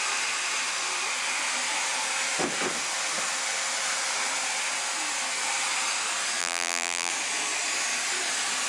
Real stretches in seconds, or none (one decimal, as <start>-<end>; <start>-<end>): 0.0-6.4; 7.1-8.7